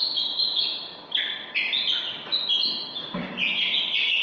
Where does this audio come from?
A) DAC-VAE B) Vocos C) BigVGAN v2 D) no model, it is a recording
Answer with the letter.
D